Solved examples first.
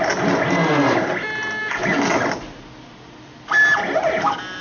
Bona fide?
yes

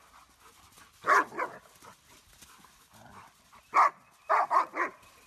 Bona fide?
yes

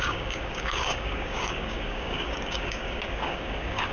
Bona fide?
no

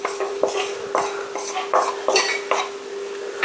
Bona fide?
yes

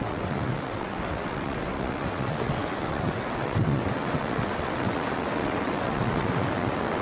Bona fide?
no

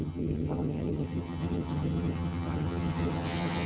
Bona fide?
no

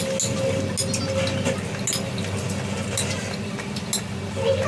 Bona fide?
yes